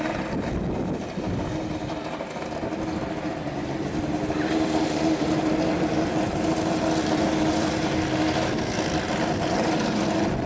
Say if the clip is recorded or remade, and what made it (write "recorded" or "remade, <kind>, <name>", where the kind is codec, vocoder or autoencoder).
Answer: recorded